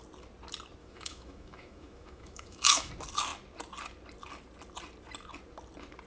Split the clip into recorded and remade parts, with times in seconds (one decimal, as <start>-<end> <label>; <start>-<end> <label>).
0.0-0.8 recorded; 0.8-2.9 remade; 2.9-6.1 recorded